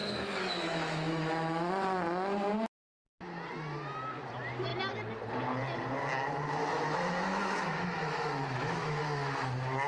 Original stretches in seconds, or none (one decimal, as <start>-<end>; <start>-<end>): 1.7-6.6; 9.0-9.9